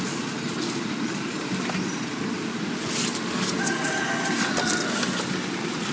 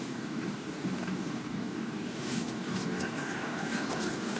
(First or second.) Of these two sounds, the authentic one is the first